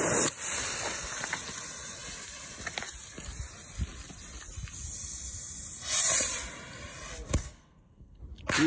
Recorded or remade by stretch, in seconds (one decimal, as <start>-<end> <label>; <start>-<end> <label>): 0.0-7.4 recorded; 7.4-8.2 remade; 8.2-8.7 recorded